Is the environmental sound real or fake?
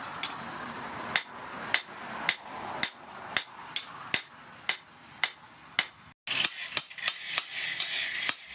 real